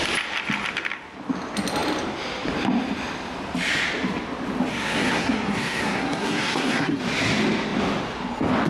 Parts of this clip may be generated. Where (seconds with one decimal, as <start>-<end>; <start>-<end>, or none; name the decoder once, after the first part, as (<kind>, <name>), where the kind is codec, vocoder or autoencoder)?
4.7-7.0 (codec, SNAC)